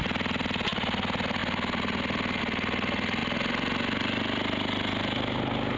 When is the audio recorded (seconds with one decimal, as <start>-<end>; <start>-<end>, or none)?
0.0-5.8